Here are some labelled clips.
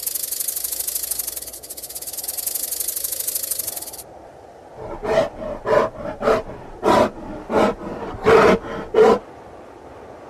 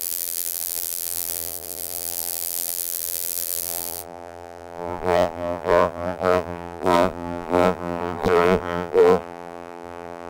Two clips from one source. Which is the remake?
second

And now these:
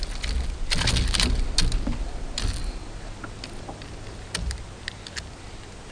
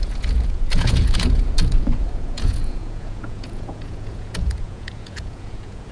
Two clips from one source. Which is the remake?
second